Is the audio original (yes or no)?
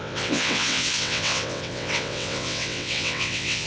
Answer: no